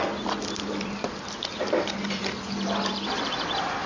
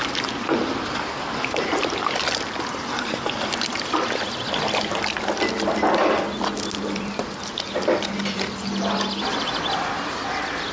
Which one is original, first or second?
second